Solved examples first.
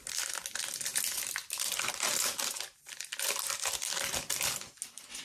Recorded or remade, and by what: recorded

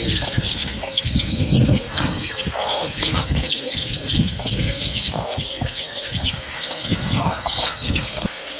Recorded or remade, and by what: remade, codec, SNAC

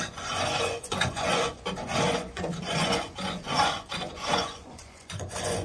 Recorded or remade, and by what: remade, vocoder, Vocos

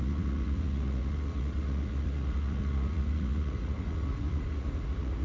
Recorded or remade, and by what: remade, vocoder, Vocos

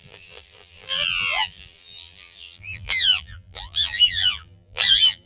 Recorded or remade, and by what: remade, vocoder, BigVGAN v2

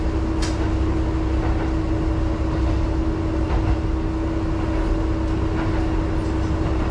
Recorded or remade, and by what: recorded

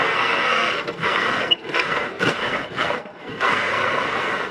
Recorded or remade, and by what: remade, codec, SNAC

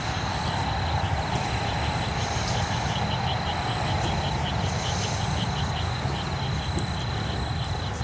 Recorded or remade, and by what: recorded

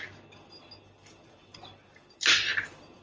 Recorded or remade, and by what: recorded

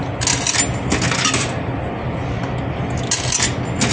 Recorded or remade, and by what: recorded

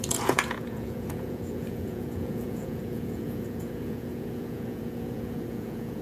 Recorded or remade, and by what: remade, vocoder, Vocos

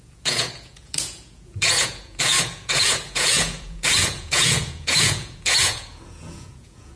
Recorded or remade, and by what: remade, vocoder, Vocos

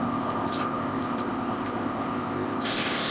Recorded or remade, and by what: remade, codec, ZipCodec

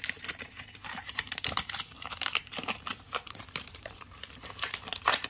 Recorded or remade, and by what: remade, vocoder, BigVGAN v2